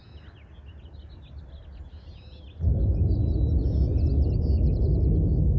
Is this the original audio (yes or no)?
yes